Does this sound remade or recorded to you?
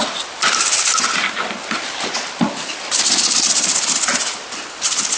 recorded